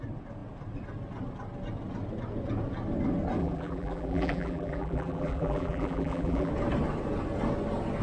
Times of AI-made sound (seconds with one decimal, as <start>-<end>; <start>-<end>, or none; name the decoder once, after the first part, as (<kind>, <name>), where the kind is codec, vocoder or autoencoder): 3.4-6.5 (vocoder, BigVGAN v2)